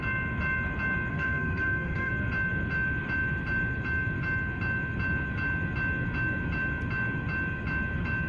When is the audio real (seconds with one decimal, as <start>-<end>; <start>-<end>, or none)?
0.0-1.1; 2.1-8.3